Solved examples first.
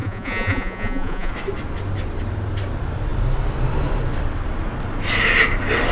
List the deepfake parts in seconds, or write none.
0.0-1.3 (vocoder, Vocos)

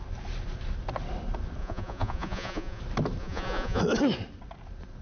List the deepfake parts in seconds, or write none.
1.6-2.8 (vocoder, Vocos); 3.2-3.8

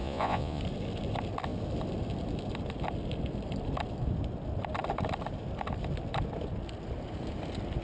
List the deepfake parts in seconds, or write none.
0.0-0.6 (vocoder, Vocos)